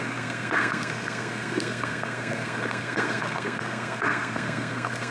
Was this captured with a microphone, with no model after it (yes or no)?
no